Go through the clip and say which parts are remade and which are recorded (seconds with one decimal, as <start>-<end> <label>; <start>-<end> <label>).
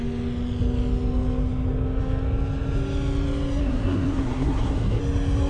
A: 0.0-3.6 recorded; 3.6-5.0 remade; 5.0-5.5 recorded